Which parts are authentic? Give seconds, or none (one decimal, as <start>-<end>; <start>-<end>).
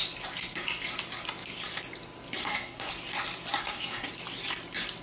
0.0-2.4; 2.9-3.6; 4.1-5.0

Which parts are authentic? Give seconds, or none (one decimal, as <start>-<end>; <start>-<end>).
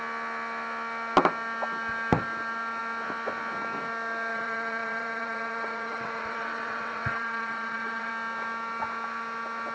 0.0-4.3; 8.1-9.7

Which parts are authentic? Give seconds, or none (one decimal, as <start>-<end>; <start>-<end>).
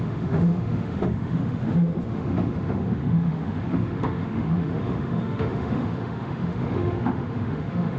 none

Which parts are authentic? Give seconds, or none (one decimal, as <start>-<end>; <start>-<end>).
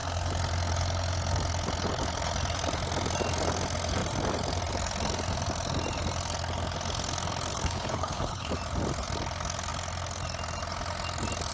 0.0-7.5; 8.5-11.5